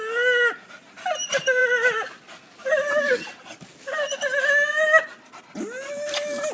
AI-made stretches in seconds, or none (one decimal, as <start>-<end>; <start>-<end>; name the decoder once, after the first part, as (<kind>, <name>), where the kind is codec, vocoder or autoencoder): none